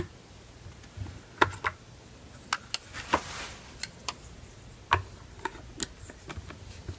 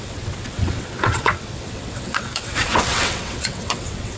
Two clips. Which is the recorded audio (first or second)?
first